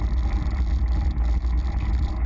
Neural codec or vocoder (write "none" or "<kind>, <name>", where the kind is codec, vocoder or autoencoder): none